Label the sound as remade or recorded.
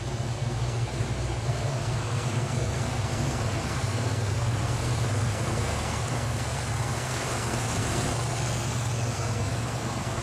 remade